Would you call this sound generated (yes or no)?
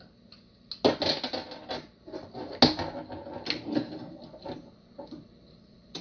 no